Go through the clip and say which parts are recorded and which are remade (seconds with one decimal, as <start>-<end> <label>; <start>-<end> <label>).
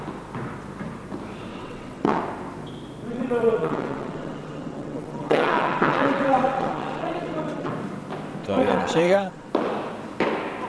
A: 0.0-1.5 recorded; 1.5-2.2 remade; 2.2-3.1 recorded; 3.1-7.7 remade; 7.7-8.4 recorded; 8.4-9.5 remade; 9.5-10.7 recorded